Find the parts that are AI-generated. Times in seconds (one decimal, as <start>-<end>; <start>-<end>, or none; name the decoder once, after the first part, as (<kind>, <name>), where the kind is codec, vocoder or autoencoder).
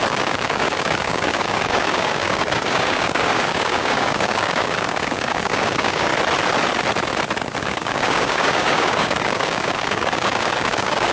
0.0-6.1 (codec, DAC); 7.6-11.1